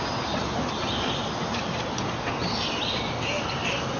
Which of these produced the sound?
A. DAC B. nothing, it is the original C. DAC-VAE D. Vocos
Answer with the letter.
B